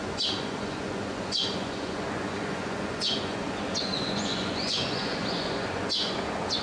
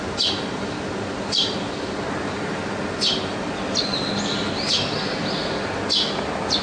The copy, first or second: first